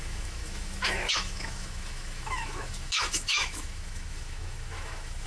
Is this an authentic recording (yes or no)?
no